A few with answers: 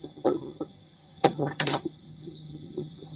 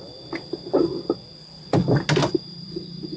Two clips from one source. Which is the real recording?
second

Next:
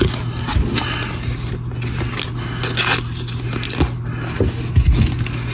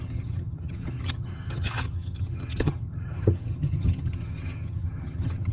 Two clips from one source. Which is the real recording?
first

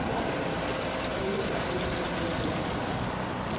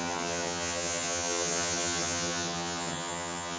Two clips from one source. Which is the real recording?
first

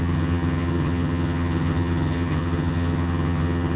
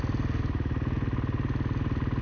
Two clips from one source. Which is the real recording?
second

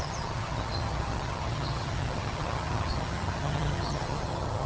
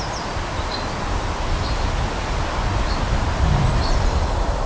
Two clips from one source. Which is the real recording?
second